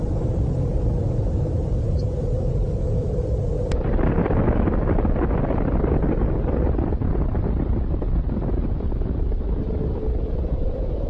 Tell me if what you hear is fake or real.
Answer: real